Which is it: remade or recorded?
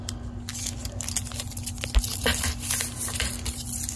recorded